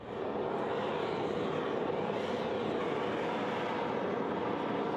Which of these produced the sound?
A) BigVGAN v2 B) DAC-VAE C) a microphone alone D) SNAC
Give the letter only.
C